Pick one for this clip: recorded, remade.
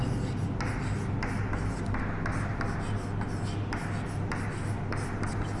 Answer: recorded